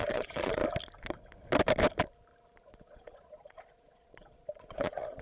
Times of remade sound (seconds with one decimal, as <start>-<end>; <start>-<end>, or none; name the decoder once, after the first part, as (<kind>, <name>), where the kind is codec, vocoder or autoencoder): 0.0-0.6 (vocoder, Vocos); 2.6-5.2